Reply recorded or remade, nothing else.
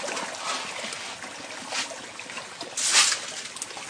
recorded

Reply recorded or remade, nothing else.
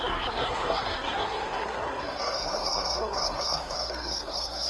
remade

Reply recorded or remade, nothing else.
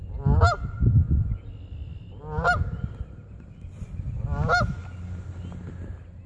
recorded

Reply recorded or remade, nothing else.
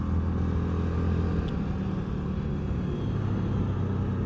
recorded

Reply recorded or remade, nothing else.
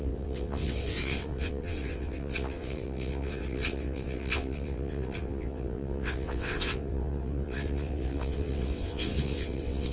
remade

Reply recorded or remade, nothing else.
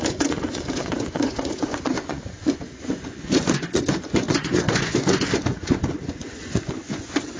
remade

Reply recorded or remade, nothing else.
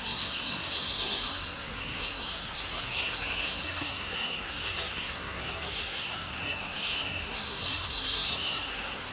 remade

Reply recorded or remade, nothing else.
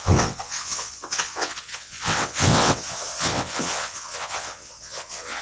remade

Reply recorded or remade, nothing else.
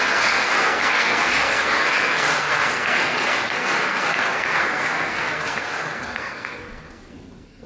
remade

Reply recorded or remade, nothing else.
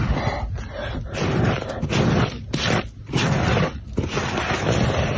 recorded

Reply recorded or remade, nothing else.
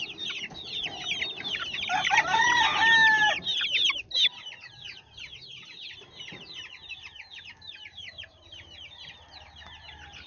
recorded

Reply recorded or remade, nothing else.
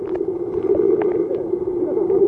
recorded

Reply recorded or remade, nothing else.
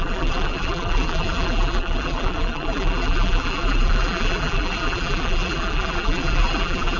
remade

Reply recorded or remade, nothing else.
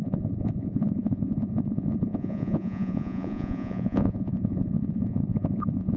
remade